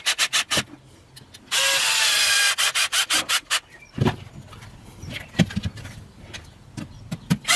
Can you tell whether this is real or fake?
real